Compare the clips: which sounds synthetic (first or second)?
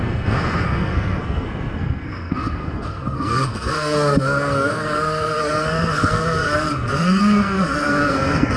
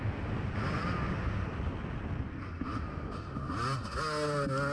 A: first